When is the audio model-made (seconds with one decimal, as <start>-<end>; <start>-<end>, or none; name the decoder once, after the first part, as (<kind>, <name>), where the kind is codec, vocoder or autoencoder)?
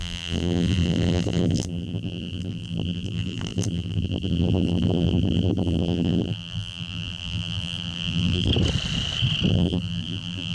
0.0-8.5 (vocoder, BigVGAN v2); 9.5-10.5